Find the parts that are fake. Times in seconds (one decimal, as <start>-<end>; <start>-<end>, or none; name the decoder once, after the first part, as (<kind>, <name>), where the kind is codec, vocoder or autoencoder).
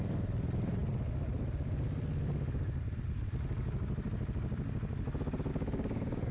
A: 5.5-6.3 (codec, DAC)